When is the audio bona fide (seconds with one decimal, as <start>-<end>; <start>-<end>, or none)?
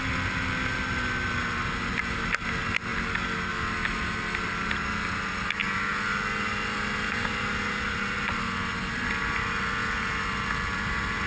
0.0-11.3